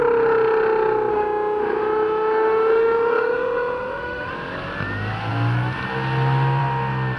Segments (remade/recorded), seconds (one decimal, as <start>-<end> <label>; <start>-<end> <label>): 0.0-1.1 recorded; 1.1-4.3 remade; 4.3-7.2 recorded